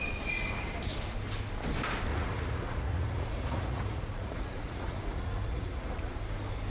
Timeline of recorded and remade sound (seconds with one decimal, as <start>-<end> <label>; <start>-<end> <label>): 0.0-2.1 recorded; 2.1-6.1 remade; 6.1-6.7 recorded